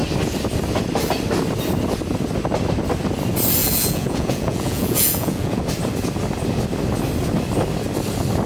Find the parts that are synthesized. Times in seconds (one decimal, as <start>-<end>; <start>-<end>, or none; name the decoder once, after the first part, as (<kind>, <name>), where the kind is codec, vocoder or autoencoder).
3.6-5.6 (vocoder, Vocos)